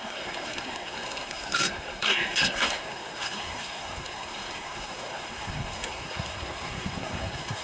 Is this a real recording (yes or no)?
no